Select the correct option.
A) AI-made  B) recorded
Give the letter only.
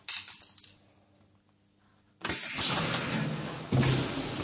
B